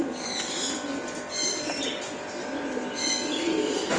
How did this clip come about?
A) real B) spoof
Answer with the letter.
A